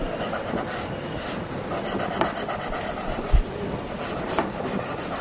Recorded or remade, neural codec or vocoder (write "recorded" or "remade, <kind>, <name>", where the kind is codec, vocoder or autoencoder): recorded